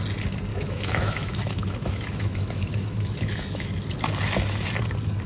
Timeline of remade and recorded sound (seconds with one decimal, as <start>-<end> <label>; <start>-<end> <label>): 0.0-0.5 recorded; 0.5-3.7 remade; 3.7-5.3 recorded